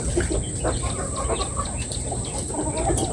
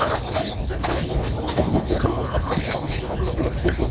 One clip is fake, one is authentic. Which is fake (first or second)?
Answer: second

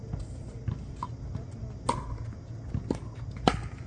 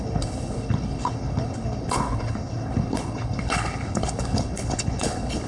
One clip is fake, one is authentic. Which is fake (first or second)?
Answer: second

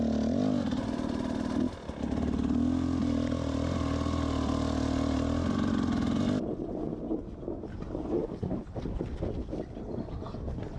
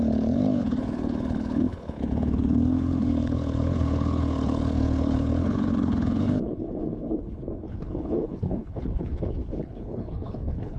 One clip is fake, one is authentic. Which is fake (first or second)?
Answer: second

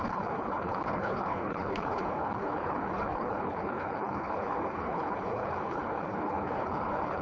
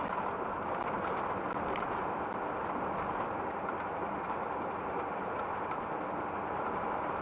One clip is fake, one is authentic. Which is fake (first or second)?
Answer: first